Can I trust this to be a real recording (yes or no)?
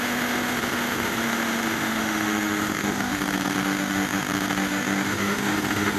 no